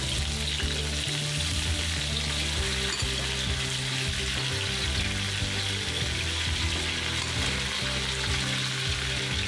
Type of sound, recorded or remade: recorded